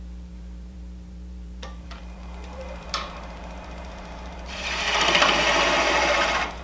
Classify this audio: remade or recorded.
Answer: remade